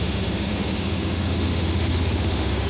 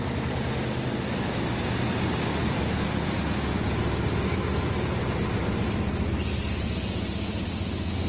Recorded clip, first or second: second